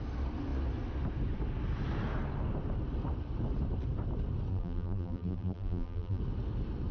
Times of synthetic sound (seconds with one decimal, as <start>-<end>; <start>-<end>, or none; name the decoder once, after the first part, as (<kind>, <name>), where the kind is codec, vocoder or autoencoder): 4.5-6.2 (vocoder, BigVGAN v2)